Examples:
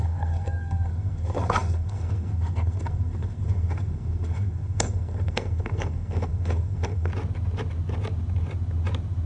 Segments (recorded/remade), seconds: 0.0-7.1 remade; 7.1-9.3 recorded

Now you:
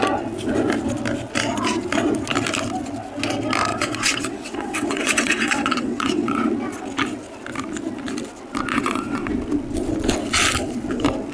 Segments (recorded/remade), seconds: 0.0-3.7 recorded; 3.7-6.5 remade; 6.5-8.7 recorded; 8.7-9.3 remade; 9.3-11.3 recorded

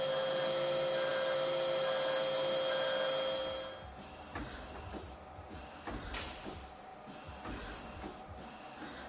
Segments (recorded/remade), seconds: 0.0-9.1 recorded

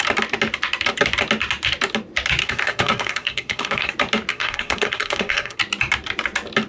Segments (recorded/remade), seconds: 0.0-2.4 recorded; 2.4-3.9 remade; 3.9-4.3 recorded; 4.3-5.6 remade; 5.6-6.7 recorded

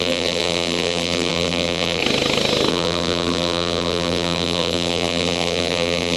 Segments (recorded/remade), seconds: 0.0-2.0 remade; 2.0-2.7 recorded; 2.7-6.2 remade

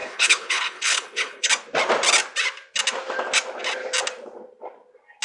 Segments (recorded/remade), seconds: 0.0-1.5 remade; 1.5-5.2 recorded